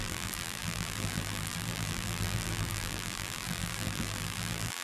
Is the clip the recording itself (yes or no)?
no